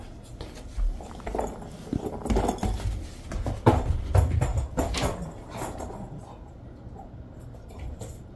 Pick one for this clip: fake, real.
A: real